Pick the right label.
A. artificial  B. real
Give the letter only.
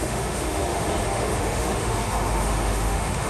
A